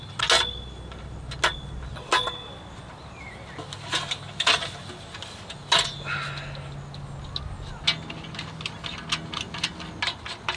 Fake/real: real